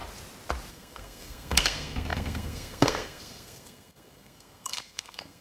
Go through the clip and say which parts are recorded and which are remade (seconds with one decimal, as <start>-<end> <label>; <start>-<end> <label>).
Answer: 0.0-0.7 recorded; 0.7-5.4 remade